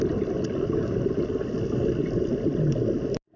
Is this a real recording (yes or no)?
yes